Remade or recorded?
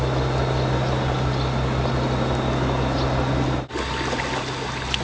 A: recorded